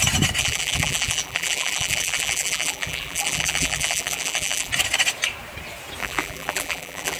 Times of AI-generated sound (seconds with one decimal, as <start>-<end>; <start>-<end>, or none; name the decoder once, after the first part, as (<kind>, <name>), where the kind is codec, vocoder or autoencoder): 0.4-4.7 (vocoder, BigVGAN v2); 6.0-7.2